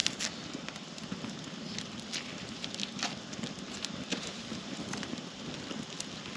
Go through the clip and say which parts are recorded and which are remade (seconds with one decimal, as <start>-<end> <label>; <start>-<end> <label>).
0.0-4.1 recorded; 4.1-5.5 remade; 5.5-6.4 recorded